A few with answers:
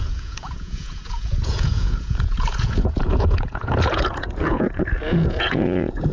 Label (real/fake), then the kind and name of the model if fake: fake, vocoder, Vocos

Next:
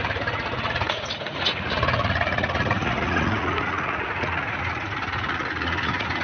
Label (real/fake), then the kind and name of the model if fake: fake, vocoder, Vocos